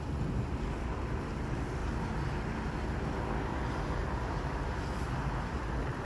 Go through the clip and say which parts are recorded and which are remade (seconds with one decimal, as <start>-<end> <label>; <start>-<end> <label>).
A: 0.0-6.0 recorded